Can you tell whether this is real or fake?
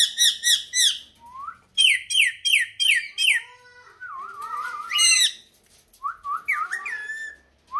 real